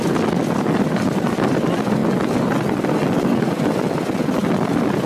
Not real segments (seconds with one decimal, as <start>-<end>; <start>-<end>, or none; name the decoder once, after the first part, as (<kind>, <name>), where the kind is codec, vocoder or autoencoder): none

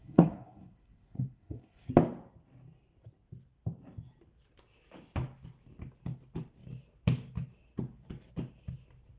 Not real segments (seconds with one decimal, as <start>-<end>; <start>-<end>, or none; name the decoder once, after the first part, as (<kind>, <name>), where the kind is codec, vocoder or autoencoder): 0.0-1.9 (codec, SNAC)

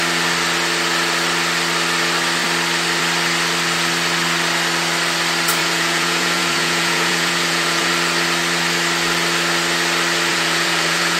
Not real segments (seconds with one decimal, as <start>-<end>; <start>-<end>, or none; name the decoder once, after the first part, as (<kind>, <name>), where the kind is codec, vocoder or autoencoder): 5.6-7.9 (vocoder, Vocos); 10.3-11.2

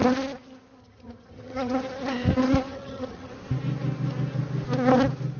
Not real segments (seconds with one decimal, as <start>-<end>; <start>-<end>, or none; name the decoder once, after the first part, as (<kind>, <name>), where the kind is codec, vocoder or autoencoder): 0.8-1.8 (vocoder, HiFi-GAN); 2.7-3.3

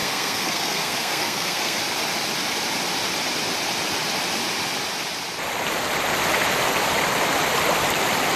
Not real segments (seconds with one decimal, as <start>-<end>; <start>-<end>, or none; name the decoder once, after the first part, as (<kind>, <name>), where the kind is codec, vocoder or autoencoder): 0.0-1.8 (codec, SNAC)

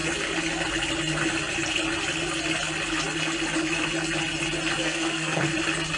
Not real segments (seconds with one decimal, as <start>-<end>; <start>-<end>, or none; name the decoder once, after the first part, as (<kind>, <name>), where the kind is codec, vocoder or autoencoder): 4.8-5.4 (codec, SNAC)

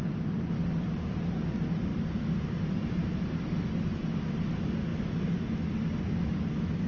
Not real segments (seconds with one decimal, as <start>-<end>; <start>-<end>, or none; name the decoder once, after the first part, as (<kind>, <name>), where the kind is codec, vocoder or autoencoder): 1.9-3.7 (vocoder, BigVGAN v2)